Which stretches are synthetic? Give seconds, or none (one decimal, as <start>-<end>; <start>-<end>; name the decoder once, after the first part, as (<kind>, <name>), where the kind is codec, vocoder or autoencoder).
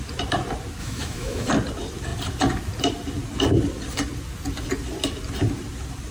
0.8-1.5 (autoencoder, DAC-VAE)